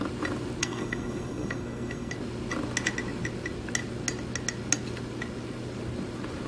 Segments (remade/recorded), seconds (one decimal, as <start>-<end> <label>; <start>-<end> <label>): 0.0-0.6 recorded; 0.6-2.1 remade; 2.1-6.5 recorded